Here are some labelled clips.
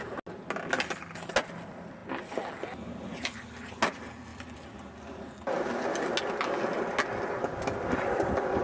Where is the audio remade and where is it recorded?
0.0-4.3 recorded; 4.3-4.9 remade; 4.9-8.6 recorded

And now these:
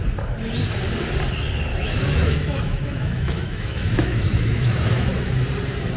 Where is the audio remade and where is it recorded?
0.0-1.7 recorded; 1.7-5.3 remade; 5.3-6.0 recorded

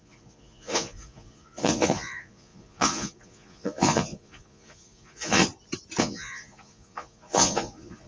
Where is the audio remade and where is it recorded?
0.0-5.4 remade; 5.4-6.0 recorded; 6.0-8.1 remade

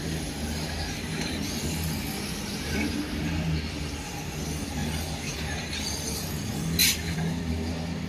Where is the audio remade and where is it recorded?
0.0-6.8 recorded; 6.8-7.4 remade; 7.4-8.1 recorded

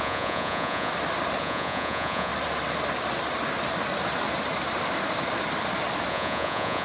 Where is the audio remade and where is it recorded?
0.0-0.9 remade; 0.9-1.4 recorded; 1.4-2.3 remade; 2.3-6.1 recorded; 6.1-6.8 remade

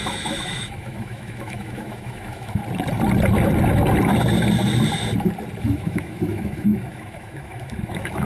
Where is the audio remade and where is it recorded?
0.0-2.6 remade; 2.6-5.6 recorded; 5.6-8.3 remade

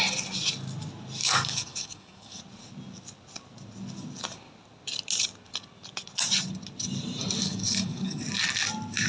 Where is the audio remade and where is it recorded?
0.0-1.2 recorded; 1.2-2.4 remade; 2.4-7.4 recorded; 7.4-8.2 remade; 8.2-9.1 recorded